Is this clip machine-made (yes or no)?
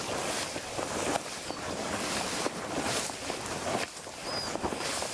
yes